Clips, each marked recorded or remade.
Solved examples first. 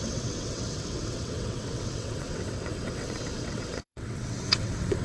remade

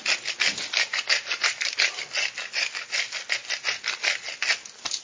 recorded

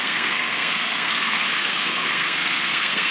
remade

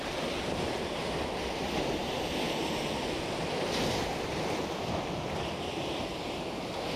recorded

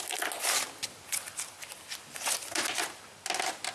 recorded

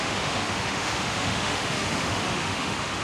remade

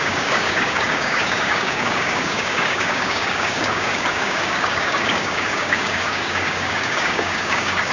remade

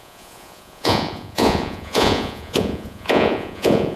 remade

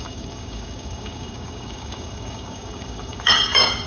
remade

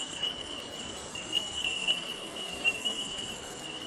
remade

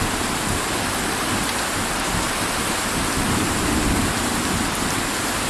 recorded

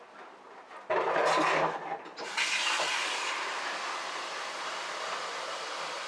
recorded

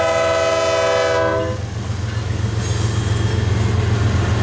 recorded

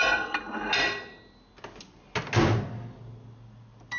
recorded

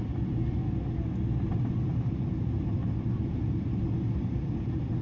recorded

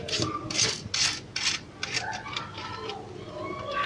recorded